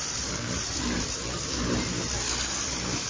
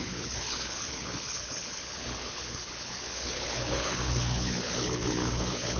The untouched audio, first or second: first